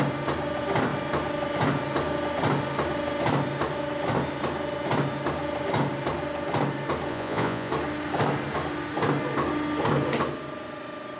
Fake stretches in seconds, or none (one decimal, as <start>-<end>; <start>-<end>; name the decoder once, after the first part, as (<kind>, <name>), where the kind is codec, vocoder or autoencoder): 7.1-7.7 (vocoder, Vocos)